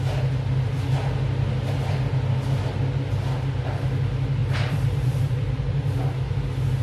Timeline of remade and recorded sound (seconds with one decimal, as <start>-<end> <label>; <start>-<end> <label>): 0.0-4.4 recorded; 4.4-6.0 remade; 6.0-6.8 recorded